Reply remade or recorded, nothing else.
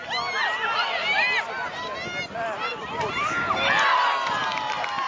recorded